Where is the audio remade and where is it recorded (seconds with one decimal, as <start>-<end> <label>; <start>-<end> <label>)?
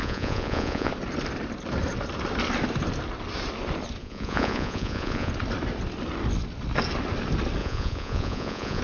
0.0-0.9 remade; 0.9-4.0 recorded; 4.0-5.3 remade; 5.3-7.6 recorded; 7.6-8.8 remade